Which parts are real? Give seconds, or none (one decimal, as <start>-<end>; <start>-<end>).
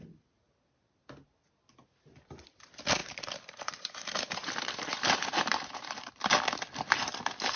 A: 0.0-3.0; 6.1-7.6